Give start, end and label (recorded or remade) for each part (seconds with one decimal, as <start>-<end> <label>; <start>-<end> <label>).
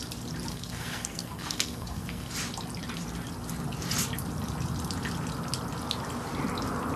0.0-0.5 recorded; 0.5-2.3 remade; 2.3-7.0 recorded